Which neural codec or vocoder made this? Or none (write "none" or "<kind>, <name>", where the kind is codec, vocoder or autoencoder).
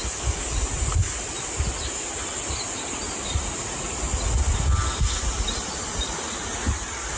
none